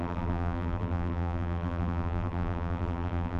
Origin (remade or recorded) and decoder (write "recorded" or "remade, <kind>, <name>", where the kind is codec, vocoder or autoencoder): remade, vocoder, BigVGAN v2